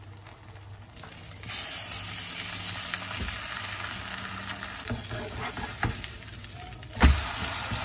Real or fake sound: real